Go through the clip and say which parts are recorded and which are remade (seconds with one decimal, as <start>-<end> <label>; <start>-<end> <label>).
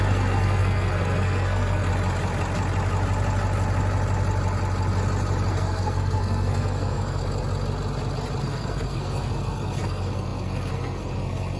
0.0-1.9 remade; 1.9-5.5 recorded; 5.5-7.2 remade; 7.2-8.4 recorded; 8.4-11.6 remade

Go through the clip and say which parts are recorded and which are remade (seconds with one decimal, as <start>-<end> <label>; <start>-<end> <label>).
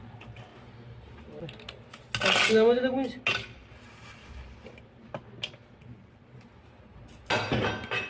0.0-8.1 recorded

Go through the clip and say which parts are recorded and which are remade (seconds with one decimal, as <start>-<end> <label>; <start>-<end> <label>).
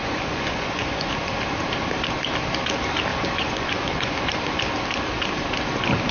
0.0-1.1 remade; 1.1-3.1 recorded; 3.1-4.2 remade; 4.2-6.1 recorded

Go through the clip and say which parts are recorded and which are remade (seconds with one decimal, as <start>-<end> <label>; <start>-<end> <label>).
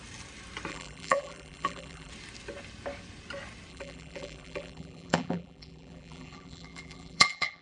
0.0-0.7 recorded; 0.7-2.1 remade; 2.1-3.7 recorded; 3.7-7.6 remade